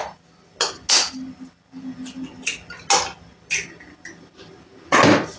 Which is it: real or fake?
real